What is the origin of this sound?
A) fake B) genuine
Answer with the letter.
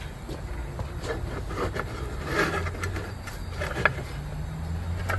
B